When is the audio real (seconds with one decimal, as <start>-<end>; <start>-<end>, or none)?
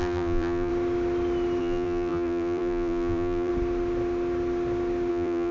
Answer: 0.7-1.6; 3.5-5.1